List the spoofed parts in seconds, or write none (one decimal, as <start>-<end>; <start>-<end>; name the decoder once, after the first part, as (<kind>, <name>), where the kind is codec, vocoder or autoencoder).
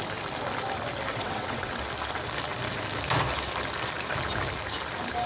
1.1-1.7 (vocoder, WaveNeXt)